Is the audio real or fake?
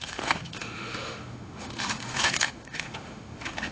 fake